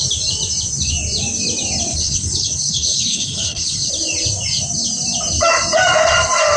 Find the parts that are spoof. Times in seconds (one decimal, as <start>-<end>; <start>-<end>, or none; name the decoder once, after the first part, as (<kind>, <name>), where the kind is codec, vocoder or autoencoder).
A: 1.9-3.9 (codec, HILCodec)